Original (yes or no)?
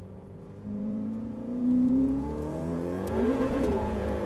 no